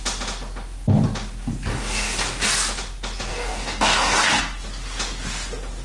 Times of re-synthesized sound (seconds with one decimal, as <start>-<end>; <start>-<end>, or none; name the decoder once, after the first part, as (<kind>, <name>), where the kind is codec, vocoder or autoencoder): 1.7-2.5 (codec, DAC); 3.3-4.4

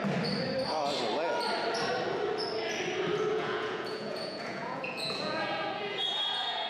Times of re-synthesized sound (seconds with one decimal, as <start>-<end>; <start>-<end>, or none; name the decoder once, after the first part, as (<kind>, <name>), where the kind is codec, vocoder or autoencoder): 3.3-6.7 (vocoder, Vocos)

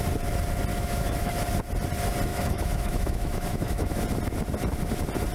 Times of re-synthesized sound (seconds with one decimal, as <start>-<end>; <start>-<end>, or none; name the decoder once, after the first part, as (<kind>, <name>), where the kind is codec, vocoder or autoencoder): 0.7-1.3 (autoencoder, DAC-VAE); 2.3-4.0

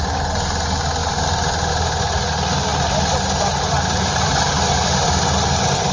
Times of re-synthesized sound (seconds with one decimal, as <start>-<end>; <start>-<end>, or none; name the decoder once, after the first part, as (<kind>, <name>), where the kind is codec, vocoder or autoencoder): none

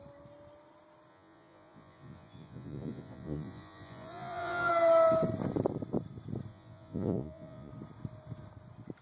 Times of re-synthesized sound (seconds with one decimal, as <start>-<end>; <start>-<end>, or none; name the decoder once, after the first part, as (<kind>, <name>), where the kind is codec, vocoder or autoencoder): 1.1-4.7 (vocoder, Vocos); 6.5-7.7

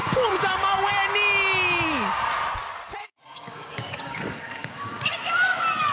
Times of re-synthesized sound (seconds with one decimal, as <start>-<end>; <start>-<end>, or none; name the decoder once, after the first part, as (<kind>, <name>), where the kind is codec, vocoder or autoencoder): 0.0-0.9 (codec, DAC); 3.0-5.0

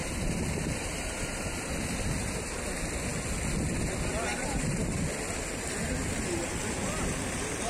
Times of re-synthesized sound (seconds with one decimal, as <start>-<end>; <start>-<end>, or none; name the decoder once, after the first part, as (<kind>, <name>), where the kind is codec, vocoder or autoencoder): 0.0-2.6 (vocoder, BigVGAN v2); 4.3-5.0